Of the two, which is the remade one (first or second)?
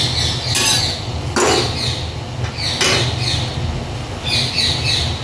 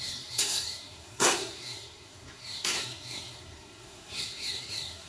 second